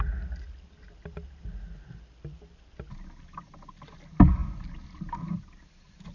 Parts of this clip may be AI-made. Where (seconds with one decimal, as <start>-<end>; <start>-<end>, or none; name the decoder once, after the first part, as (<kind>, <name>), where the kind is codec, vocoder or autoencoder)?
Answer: none